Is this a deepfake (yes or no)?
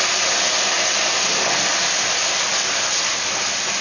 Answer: no